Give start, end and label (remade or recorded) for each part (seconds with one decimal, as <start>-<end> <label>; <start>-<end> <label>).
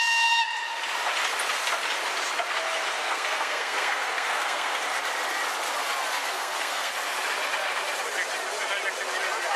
0.0-3.0 recorded; 3.0-4.8 remade; 4.8-6.2 recorded; 6.2-6.9 remade; 6.9-9.6 recorded